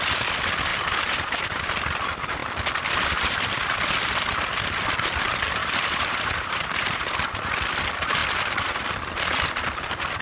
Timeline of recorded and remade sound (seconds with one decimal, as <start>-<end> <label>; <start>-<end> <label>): 0.0-0.7 recorded; 0.7-1.8 remade; 1.8-5.6 recorded; 5.6-7.2 remade; 7.2-10.2 recorded